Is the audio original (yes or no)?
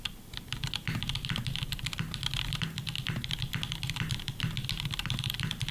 yes